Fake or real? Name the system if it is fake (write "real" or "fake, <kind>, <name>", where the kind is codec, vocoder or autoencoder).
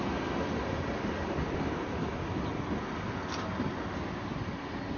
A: real